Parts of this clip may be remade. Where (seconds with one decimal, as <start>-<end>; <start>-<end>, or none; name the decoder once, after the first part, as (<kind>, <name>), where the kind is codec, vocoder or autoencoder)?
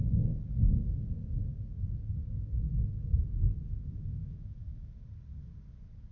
4.1-4.9 (autoencoder, DAC-VAE)